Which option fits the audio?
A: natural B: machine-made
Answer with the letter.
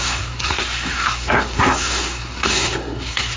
B